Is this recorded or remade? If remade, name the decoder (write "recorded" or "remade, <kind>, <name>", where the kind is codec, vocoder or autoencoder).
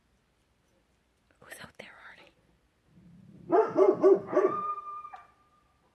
recorded